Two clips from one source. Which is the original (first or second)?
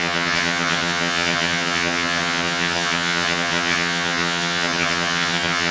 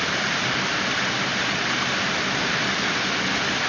second